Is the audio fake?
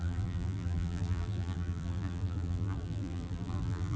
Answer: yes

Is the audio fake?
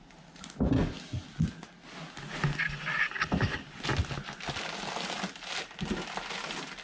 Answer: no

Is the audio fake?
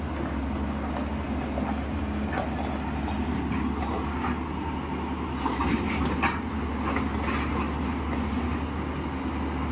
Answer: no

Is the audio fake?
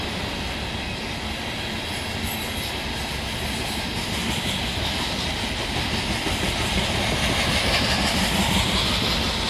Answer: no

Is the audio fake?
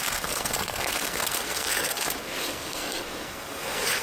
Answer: yes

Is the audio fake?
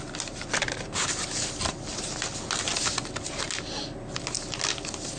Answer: no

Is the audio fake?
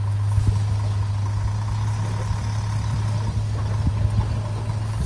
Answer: no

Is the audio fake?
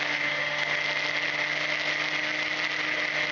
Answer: no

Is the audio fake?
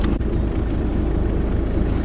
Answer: no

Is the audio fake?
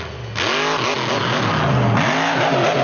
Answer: no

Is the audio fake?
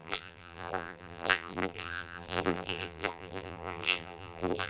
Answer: yes